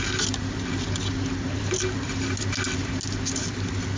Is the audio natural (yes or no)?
yes